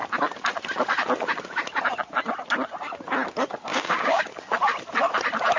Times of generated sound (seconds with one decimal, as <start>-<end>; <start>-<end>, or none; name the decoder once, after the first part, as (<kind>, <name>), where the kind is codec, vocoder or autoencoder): 3.7-4.2 (codec, DAC)